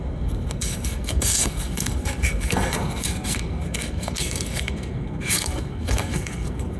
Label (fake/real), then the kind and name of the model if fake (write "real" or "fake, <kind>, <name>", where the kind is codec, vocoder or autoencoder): fake, codec, SNAC